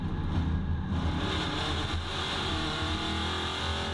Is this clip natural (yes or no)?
yes